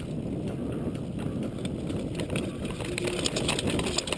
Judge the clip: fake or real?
real